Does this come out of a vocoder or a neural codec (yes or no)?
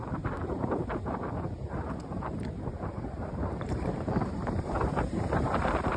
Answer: yes